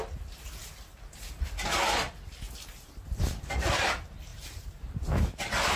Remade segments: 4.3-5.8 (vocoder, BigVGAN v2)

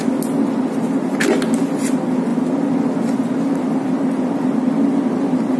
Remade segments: none

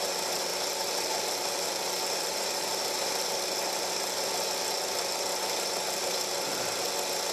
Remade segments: 0.5-3.3 (vocoder, BigVGAN v2)

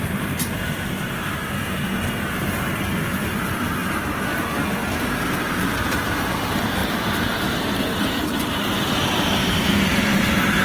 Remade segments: 0.0-10.6 (vocoder, BigVGAN v2)